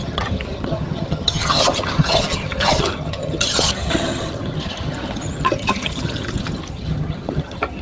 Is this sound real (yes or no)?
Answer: no